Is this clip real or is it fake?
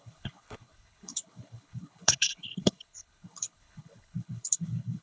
fake